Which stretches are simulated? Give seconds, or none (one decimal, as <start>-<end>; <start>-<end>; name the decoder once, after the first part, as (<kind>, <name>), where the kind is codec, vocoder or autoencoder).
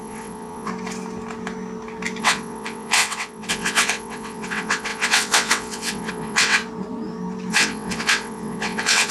0.0-0.7 (vocoder, WaveNeXt); 2.2-6.6; 7.5-9.1